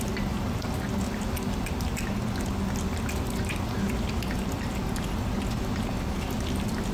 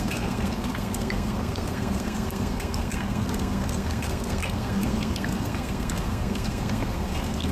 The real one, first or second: first